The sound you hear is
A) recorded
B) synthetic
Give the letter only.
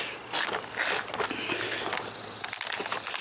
A